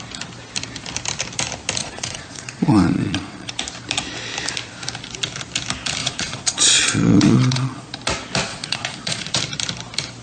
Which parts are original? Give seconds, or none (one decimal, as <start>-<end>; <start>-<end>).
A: 0.0-1.8; 3.5-6.0; 8.0-8.5; 9.4-10.2